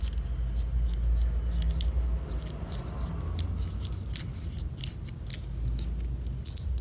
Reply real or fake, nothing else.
real